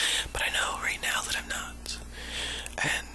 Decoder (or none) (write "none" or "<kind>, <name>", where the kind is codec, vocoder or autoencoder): none